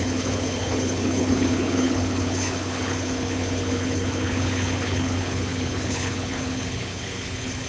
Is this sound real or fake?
fake